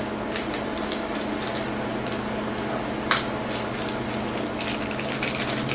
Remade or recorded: recorded